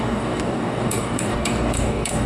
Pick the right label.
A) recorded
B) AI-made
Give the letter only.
B